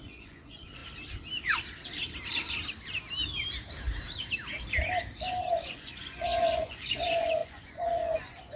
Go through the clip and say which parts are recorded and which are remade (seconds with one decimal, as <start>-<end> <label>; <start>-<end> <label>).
0.0-0.8 remade; 0.8-5.5 recorded; 5.5-8.6 remade